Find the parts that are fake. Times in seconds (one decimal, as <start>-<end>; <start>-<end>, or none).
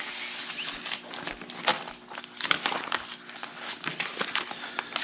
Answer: none